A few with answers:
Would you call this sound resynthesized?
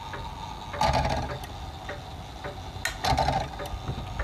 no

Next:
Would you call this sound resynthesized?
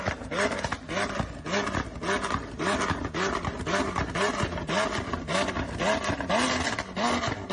no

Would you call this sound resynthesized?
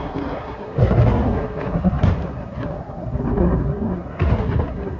yes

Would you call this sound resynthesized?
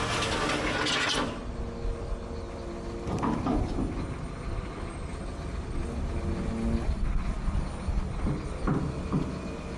no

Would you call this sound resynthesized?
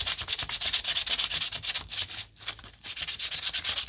no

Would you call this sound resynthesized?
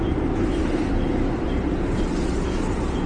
no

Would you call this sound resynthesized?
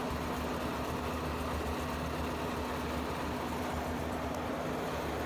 no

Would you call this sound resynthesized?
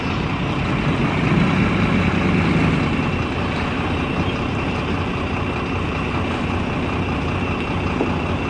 no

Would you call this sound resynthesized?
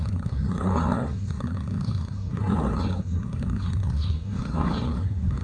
yes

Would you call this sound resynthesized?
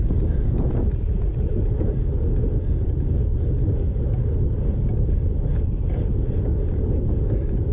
no